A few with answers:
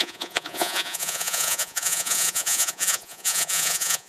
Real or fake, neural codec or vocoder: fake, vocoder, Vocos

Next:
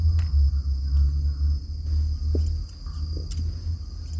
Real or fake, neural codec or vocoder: real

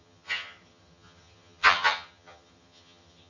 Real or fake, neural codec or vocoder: fake, vocoder, HiFi-GAN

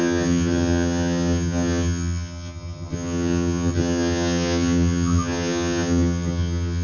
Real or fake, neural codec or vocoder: fake, vocoder, HiFi-GAN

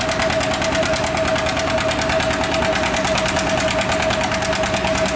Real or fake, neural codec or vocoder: real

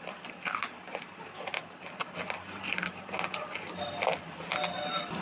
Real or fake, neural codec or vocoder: real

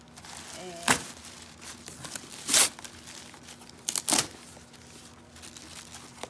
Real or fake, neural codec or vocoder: real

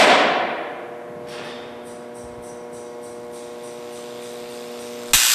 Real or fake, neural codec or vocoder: real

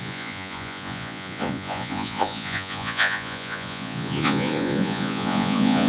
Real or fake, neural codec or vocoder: fake, vocoder, Vocos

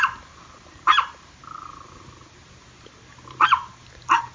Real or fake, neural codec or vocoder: fake, vocoder, BigVGAN v2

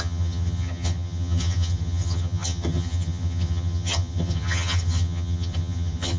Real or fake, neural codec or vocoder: fake, vocoder, HiFi-GAN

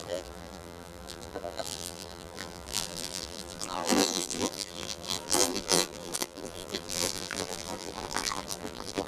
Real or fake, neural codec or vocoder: fake, vocoder, BigVGAN v2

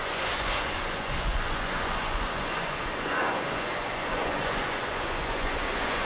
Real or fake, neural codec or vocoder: fake, vocoder, Vocos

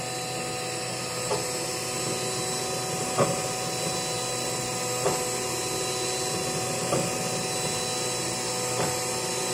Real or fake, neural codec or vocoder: real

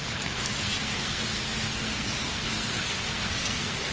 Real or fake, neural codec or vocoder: fake, codec, SNAC